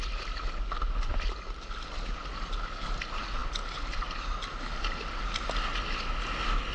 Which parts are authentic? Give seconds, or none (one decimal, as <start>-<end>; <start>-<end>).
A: 0.0-6.7

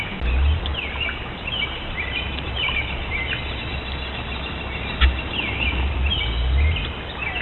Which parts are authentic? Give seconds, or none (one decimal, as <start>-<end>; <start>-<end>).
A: 0.0-0.7; 3.7-7.4